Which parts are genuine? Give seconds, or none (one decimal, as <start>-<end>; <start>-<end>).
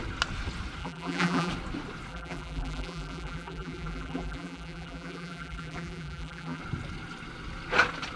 0.0-0.8; 1.5-2.1; 6.6-8.2